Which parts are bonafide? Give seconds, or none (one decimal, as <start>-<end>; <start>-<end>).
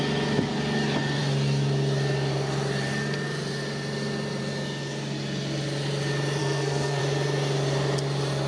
0.0-6.4; 7.0-8.5